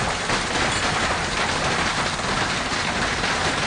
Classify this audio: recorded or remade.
recorded